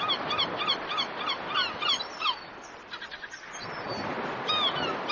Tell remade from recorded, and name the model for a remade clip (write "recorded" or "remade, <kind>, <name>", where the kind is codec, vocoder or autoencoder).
recorded